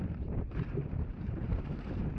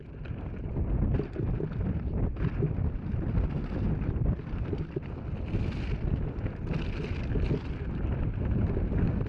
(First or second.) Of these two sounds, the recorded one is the second